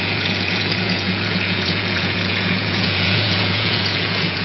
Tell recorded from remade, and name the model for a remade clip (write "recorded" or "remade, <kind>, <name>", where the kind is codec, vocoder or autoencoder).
remade, vocoder, Vocos